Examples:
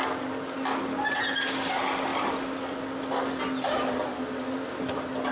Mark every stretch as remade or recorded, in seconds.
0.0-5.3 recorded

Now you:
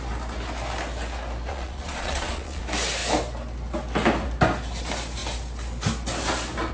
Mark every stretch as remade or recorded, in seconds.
0.0-1.5 recorded; 1.5-2.6 remade; 2.6-6.7 recorded

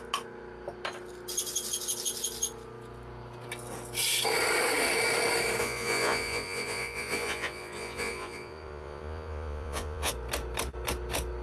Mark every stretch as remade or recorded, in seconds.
0.0-5.6 recorded; 5.6-10.1 remade; 10.1-11.4 recorded

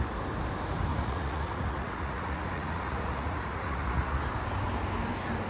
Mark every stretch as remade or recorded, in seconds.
0.0-0.9 recorded; 0.9-4.2 remade; 4.2-5.5 recorded

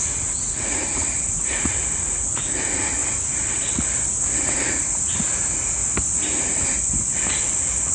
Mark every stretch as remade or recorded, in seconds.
0.0-3.0 remade; 3.0-4.6 recorded; 4.6-5.8 remade; 5.8-7.4 recorded; 7.4-7.9 remade

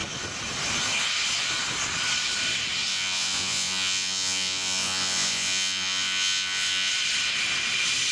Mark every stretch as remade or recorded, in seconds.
0.0-2.9 recorded; 2.9-6.9 remade; 6.9-8.1 recorded

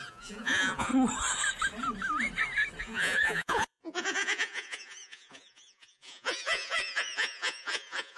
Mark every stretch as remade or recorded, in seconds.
0.0-0.9 remade; 0.9-2.8 recorded; 2.8-8.2 remade